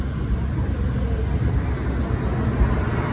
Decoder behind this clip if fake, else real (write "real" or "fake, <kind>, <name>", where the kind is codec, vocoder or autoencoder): real